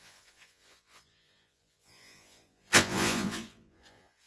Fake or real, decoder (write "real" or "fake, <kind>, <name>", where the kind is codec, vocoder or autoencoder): fake, vocoder, Vocos